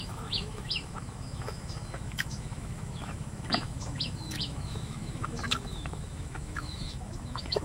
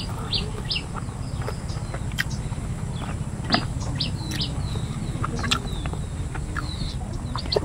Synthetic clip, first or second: first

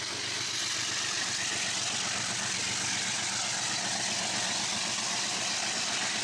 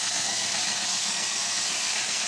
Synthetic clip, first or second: second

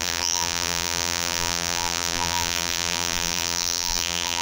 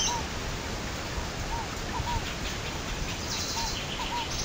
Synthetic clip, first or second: first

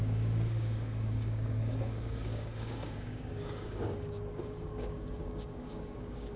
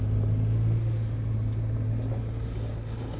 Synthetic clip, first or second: first